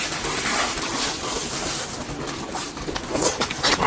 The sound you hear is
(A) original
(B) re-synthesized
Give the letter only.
A